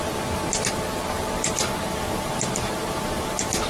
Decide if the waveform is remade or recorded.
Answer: remade